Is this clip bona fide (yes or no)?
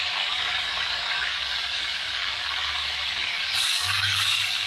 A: no